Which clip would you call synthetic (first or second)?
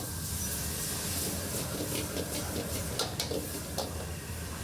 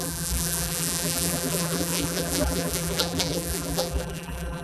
second